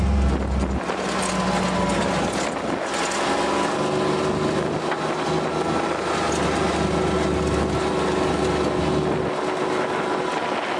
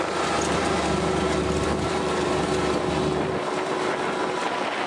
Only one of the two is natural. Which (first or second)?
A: first